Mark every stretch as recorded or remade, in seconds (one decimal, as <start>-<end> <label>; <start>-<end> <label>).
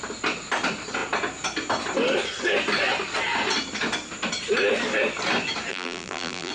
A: 0.0-5.7 recorded; 5.7-6.5 remade